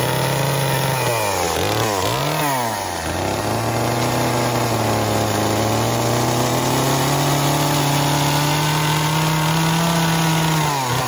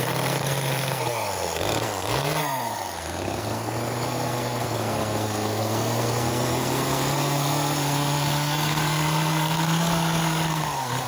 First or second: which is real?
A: first